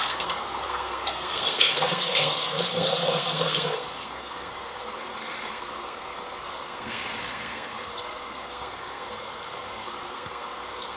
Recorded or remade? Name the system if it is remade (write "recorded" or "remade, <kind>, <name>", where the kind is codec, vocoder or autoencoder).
remade, codec, SNAC